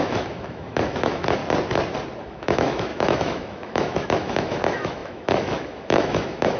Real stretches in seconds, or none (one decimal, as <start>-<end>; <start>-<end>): 1.4-2.2